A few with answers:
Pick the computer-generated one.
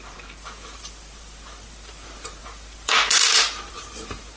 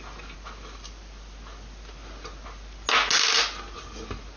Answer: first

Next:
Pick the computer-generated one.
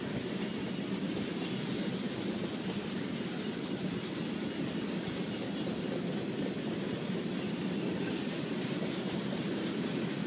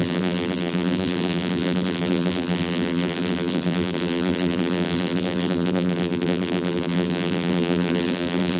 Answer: second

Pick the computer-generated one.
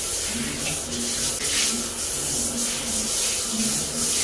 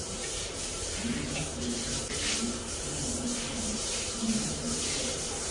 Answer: second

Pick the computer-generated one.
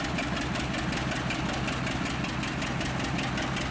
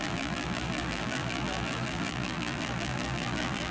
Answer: second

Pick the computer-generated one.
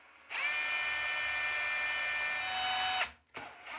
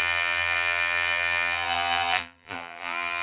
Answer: second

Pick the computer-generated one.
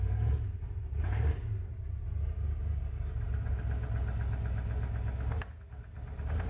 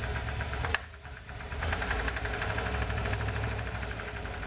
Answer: second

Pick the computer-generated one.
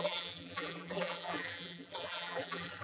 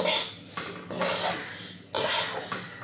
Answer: first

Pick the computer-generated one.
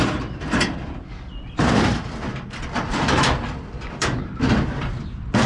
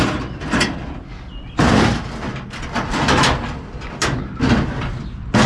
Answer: first